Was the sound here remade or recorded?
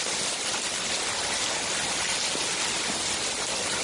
recorded